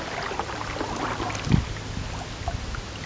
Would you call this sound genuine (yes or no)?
yes